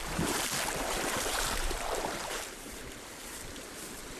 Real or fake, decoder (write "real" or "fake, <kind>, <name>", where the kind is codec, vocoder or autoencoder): fake, vocoder, BigVGAN v2